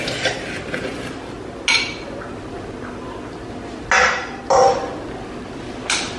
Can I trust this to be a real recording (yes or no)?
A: yes